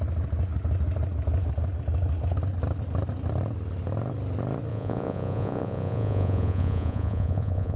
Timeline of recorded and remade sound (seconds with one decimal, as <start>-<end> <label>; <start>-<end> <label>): 0.0-4.7 recorded; 4.7-7.8 remade